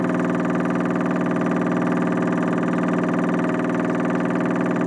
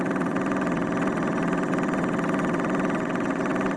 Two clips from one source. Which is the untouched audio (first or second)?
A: first